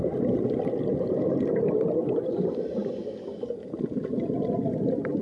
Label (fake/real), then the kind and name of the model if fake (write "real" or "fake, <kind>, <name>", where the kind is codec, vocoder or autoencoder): real